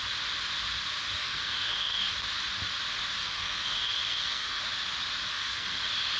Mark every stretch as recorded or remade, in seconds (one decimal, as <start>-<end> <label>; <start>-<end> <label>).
0.0-1.2 recorded; 1.2-2.0 remade; 2.0-3.2 recorded; 3.2-4.6 remade; 4.6-5.3 recorded; 5.3-5.8 remade; 5.8-6.2 recorded